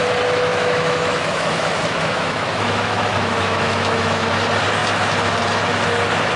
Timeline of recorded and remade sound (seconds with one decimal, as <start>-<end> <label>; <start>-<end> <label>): 0.0-0.5 recorded; 0.5-4.3 remade; 4.3-6.4 recorded